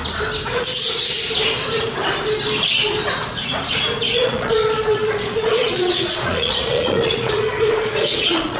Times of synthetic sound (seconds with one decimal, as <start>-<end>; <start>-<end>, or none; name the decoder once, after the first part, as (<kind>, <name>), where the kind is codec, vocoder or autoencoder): 4.1-8.6 (vocoder, Vocos)